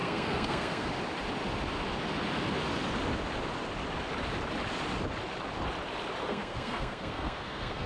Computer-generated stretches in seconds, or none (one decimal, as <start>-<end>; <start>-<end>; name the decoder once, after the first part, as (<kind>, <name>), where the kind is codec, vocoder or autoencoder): 0.0-0.9 (codec, SNAC); 6.3-7.9